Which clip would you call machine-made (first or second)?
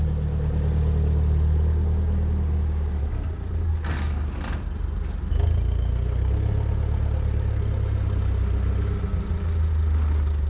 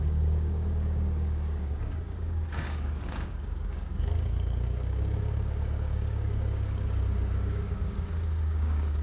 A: second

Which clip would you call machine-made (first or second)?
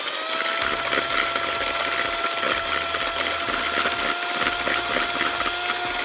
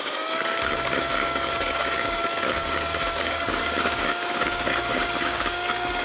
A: second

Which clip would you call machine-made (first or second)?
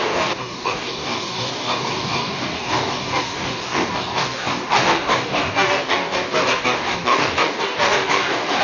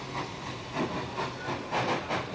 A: first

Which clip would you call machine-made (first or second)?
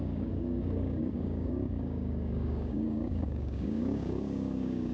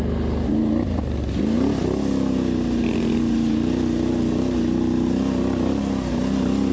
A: first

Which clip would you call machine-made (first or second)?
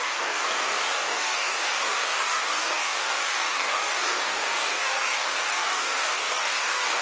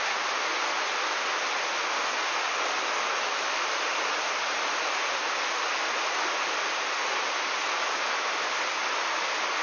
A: first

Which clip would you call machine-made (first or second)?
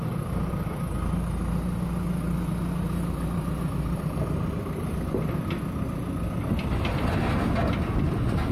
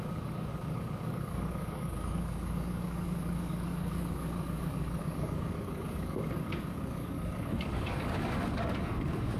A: second